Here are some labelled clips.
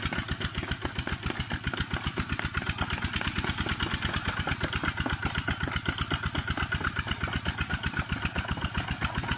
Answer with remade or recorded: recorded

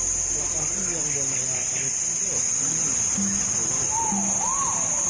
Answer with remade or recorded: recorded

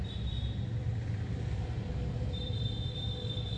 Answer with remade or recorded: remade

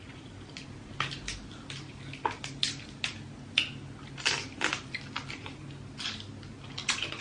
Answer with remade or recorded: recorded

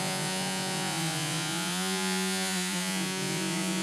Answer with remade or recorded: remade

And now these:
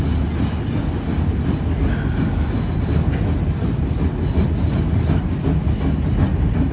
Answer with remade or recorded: recorded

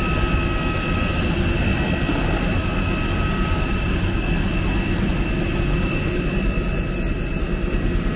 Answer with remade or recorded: recorded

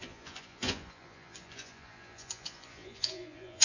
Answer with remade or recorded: remade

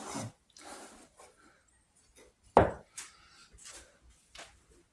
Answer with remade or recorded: recorded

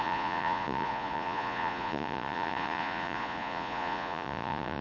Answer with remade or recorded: remade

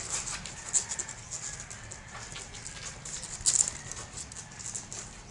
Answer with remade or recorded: recorded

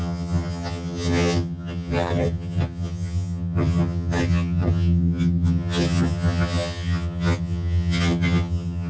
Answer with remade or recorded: remade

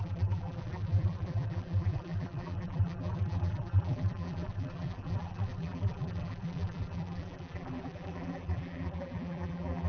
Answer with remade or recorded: remade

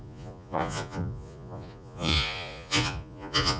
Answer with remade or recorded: remade